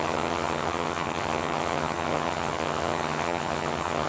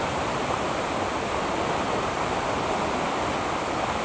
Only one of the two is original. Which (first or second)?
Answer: second